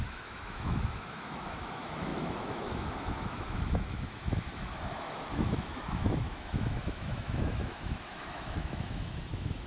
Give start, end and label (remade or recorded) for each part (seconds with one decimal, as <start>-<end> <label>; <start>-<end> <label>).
0.0-9.7 remade